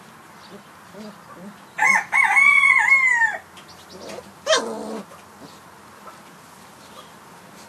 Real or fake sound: real